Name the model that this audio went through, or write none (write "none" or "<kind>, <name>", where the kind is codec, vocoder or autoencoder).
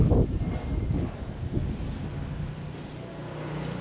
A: none